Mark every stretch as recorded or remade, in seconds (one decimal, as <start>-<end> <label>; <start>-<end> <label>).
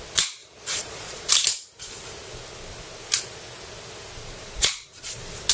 0.0-0.4 recorded; 0.4-1.3 remade; 1.3-4.2 recorded; 4.2-5.1 remade; 5.1-5.5 recorded